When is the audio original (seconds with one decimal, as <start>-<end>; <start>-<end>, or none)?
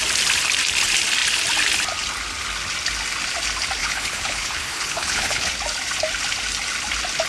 0.0-3.8; 5.5-7.3